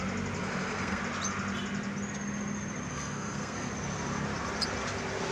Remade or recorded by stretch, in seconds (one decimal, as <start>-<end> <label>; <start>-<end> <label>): 0.0-0.4 recorded; 0.4-1.0 remade; 1.0-2.9 recorded; 2.9-3.7 remade; 3.7-5.3 recorded